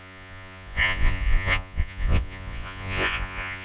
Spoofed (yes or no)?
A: yes